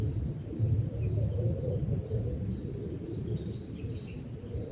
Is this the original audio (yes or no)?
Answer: yes